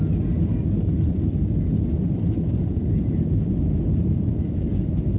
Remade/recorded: recorded